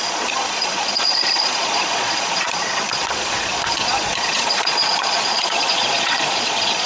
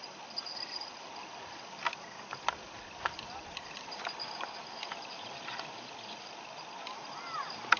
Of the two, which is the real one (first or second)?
second